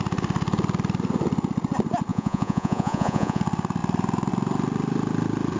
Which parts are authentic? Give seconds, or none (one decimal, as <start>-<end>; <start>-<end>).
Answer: 0.0-2.1; 3.4-5.6